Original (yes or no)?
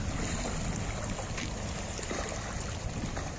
yes